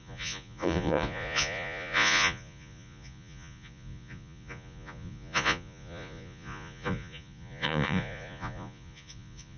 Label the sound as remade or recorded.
remade